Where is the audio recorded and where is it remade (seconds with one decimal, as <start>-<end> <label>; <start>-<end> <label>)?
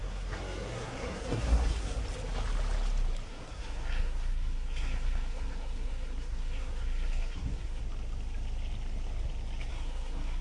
0.0-2.0 remade; 2.0-3.3 recorded; 3.3-7.8 remade; 7.8-9.7 recorded; 9.7-10.4 remade